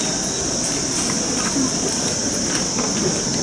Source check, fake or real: real